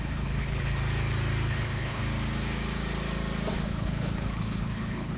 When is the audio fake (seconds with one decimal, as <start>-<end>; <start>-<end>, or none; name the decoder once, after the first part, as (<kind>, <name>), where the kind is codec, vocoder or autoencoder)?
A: 0.0-0.8 (codec, HILCodec); 1.5-2.0; 3.5-5.2